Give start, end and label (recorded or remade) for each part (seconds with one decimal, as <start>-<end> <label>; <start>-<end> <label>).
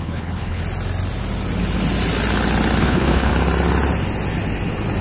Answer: 0.0-0.6 remade; 0.6-2.8 recorded; 2.8-3.3 remade; 3.3-5.0 recorded